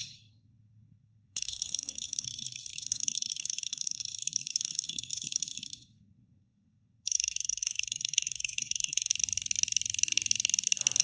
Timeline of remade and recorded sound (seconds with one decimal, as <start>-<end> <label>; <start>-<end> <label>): 0.0-9.1 remade; 9.1-11.0 recorded